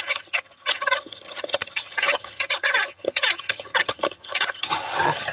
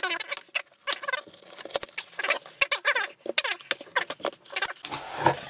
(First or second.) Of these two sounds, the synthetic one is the first